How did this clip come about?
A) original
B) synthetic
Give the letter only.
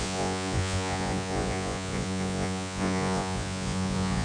B